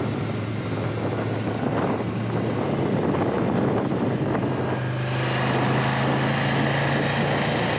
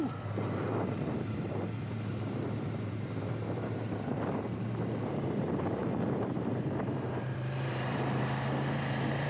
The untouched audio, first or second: first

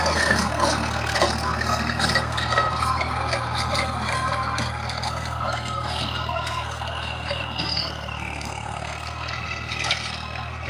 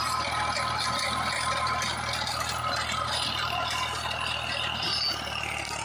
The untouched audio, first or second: second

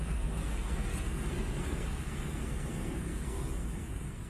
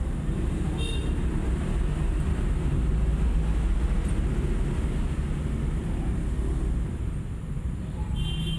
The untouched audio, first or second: second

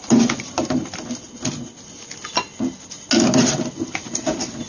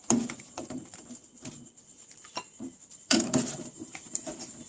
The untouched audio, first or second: first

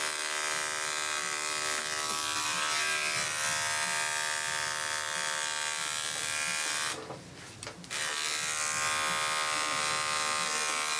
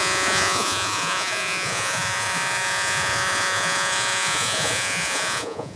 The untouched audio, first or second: first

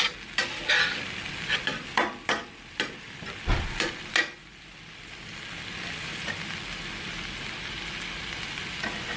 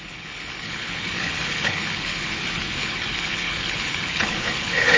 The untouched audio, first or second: first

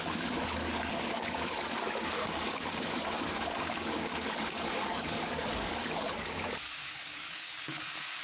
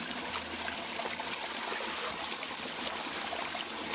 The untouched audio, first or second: second